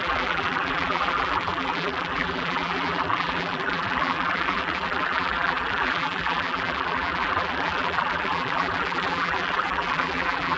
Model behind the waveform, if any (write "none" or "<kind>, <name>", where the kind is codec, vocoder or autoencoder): vocoder, BigVGAN v2